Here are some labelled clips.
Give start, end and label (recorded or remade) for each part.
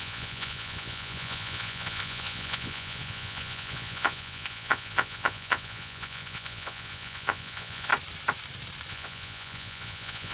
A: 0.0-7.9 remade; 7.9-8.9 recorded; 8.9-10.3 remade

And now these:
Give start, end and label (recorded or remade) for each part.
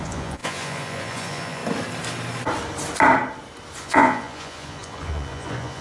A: 0.0-1.6 remade; 1.6-3.8 recorded; 3.8-5.8 remade